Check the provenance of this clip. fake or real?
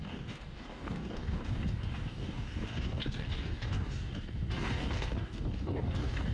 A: fake